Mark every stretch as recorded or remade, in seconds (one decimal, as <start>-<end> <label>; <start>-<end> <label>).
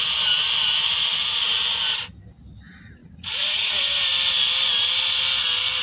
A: 0.0-3.0 recorded; 3.0-4.0 remade; 4.0-5.8 recorded